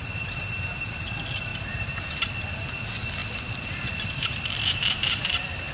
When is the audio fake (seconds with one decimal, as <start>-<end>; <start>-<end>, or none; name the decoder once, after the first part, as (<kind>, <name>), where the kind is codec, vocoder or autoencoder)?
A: none